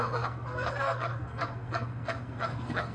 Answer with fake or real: fake